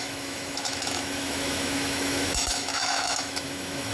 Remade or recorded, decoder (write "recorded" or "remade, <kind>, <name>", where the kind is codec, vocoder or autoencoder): remade, autoencoder, DAC-VAE